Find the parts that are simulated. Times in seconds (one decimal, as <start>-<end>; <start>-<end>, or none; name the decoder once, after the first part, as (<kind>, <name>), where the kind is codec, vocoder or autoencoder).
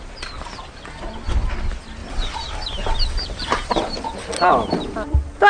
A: none